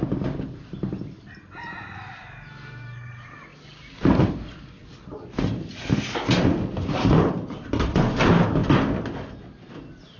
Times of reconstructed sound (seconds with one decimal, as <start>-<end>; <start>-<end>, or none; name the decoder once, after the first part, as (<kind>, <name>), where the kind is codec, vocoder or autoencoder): none

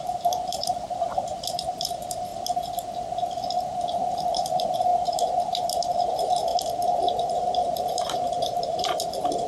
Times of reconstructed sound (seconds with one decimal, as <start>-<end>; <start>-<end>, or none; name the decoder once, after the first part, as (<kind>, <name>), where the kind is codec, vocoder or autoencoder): 0.0-2.3 (vocoder, BigVGAN v2); 4.3-6.5; 7.3-9.5